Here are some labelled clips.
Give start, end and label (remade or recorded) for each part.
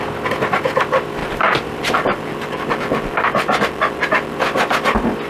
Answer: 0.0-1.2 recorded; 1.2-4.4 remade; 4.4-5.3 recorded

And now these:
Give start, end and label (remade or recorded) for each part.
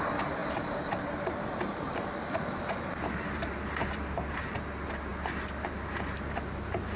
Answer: 0.0-0.4 recorded; 0.4-4.6 remade; 4.6-7.0 recorded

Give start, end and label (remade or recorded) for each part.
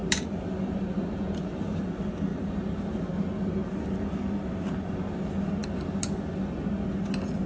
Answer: 0.0-1.9 remade; 1.9-2.3 recorded; 2.3-3.1 remade; 3.1-7.5 recorded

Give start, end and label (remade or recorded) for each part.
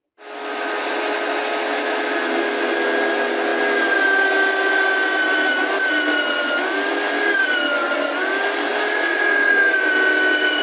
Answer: 0.0-10.6 recorded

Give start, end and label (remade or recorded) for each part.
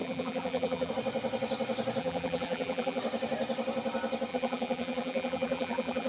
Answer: 0.0-0.9 remade; 0.9-2.0 recorded; 2.0-3.0 remade; 3.0-4.3 recorded; 4.3-6.1 remade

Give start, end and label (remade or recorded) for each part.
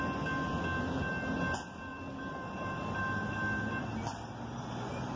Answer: 0.0-1.9 recorded; 1.9-4.2 remade; 4.2-5.2 recorded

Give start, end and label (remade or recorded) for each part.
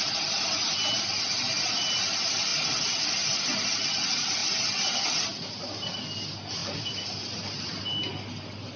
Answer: 0.0-6.6 recorded; 6.6-7.7 remade; 7.7-8.8 recorded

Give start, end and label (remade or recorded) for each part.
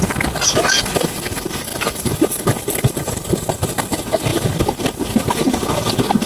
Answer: 0.0-1.7 recorded; 1.7-2.3 remade; 2.3-6.3 recorded